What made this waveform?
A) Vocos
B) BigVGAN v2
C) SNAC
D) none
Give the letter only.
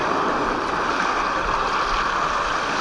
D